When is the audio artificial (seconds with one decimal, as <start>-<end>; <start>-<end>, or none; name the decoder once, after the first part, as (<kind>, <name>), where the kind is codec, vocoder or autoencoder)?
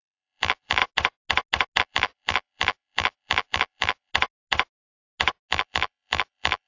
0.0-0.8 (vocoder, BigVGAN v2); 1.8-4.1; 5.5-6.7